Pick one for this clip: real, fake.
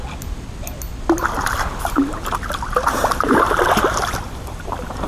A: real